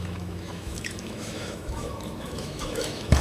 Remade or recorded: remade